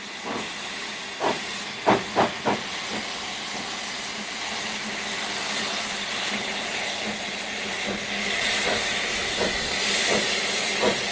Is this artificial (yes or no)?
no